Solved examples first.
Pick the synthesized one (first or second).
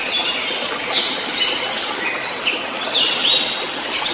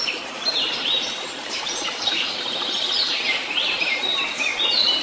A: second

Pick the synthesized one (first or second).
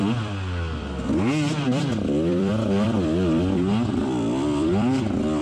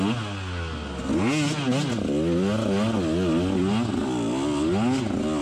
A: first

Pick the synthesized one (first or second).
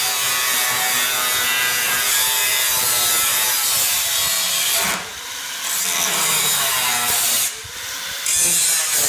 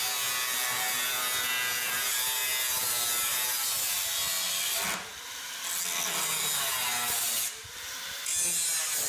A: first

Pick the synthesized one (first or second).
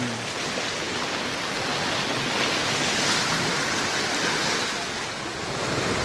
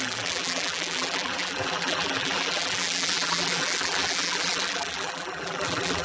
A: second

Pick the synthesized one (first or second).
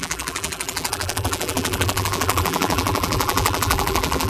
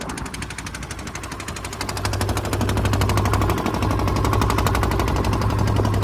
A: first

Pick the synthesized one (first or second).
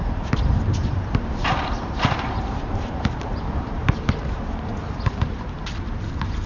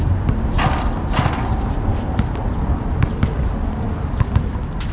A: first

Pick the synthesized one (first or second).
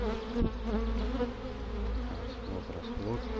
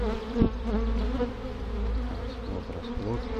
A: second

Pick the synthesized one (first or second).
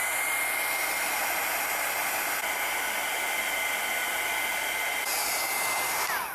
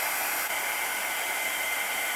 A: second